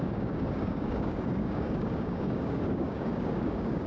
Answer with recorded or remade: remade